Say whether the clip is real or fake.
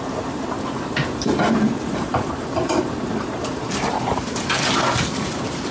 fake